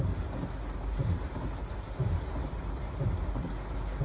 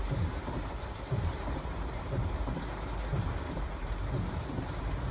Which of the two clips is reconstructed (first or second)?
second